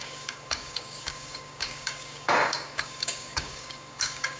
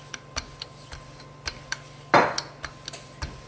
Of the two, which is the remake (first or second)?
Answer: first